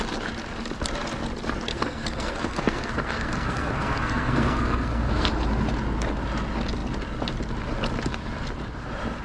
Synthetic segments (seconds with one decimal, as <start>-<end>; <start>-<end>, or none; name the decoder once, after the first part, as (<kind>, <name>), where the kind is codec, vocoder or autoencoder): 1.7-5.3 (codec, SNAC)